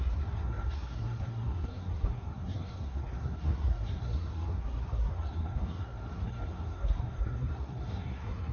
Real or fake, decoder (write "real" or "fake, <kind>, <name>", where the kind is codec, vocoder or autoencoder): fake, codec, SNAC